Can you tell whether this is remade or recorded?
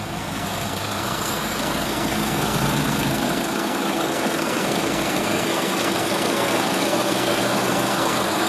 remade